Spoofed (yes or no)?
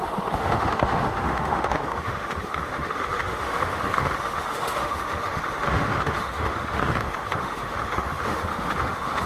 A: yes